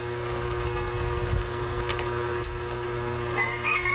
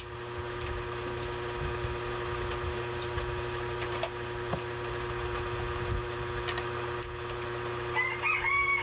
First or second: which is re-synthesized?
first